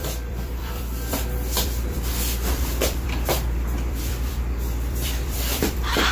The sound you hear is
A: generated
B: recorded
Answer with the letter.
A